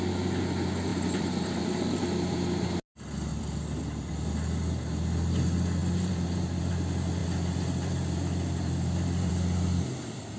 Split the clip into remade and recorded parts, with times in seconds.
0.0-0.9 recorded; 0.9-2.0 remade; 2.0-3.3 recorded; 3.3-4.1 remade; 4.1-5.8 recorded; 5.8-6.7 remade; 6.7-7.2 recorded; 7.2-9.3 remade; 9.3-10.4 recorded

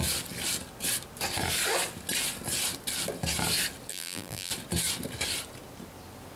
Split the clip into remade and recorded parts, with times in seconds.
0.0-3.9 recorded; 3.9-4.5 remade; 4.5-6.4 recorded

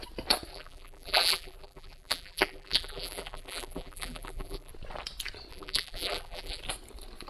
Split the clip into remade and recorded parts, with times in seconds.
0.0-0.5 recorded; 0.5-4.7 remade; 4.7-5.5 recorded; 5.5-6.6 remade; 6.6-7.3 recorded

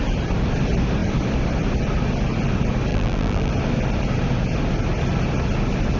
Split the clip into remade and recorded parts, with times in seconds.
0.0-2.9 recorded; 2.9-3.5 remade; 3.5-6.0 recorded

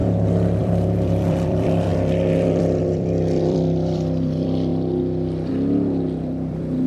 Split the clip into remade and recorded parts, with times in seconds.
0.0-0.6 recorded; 0.6-4.7 remade; 4.7-5.5 recorded; 5.5-6.9 remade

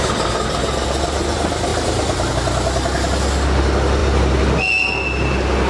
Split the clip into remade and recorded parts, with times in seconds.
0.0-1.7 recorded; 1.7-2.3 remade; 2.3-5.7 recorded

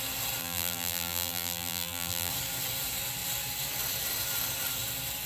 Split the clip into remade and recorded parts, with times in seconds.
0.0-0.4 recorded; 0.4-2.3 remade; 2.3-5.3 recorded